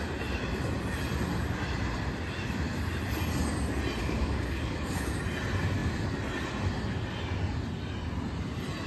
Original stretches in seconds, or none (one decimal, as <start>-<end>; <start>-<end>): 0.0-4.0; 5.2-8.9